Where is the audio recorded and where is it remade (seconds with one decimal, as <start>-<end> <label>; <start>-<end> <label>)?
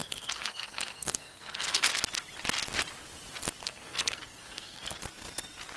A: 0.0-1.9 remade; 1.9-3.6 recorded; 3.6-5.0 remade; 5.0-5.8 recorded